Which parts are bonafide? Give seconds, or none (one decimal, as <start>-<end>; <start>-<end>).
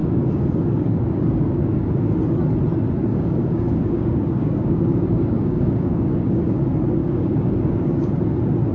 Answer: 2.0-3.1; 6.6-7.0; 8.1-8.7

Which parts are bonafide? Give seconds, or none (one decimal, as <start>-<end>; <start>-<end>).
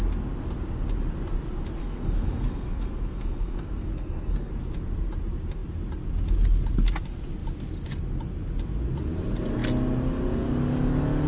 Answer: 0.0-1.8; 4.5-11.3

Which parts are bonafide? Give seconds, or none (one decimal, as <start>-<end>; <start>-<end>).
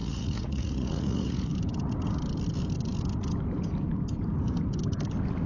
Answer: 1.5-5.5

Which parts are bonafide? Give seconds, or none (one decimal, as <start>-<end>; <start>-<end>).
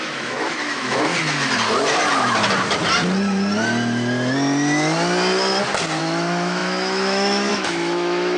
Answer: 1.1-6.0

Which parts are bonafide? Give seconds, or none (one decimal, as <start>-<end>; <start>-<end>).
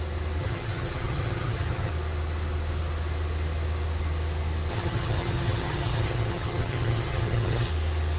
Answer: 0.0-0.4; 1.9-4.7; 7.7-8.2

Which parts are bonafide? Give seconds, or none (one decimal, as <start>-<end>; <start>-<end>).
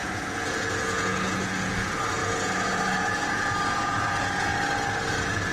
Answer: 4.5-5.1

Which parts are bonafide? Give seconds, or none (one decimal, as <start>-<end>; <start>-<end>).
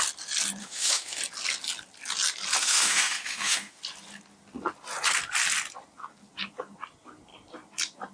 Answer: 0.0-0.6; 1.2-2.6; 3.8-8.1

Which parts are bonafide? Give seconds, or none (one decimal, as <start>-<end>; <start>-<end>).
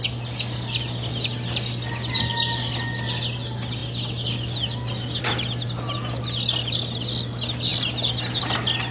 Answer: 0.0-8.9